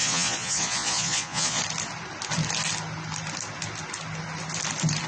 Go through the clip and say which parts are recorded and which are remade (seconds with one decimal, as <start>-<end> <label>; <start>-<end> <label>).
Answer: 0.0-1.6 remade; 1.6-5.1 recorded